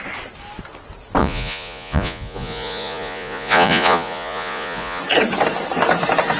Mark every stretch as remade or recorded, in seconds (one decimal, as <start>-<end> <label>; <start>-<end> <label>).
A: 0.0-1.2 recorded; 1.2-5.0 remade; 5.0-6.4 recorded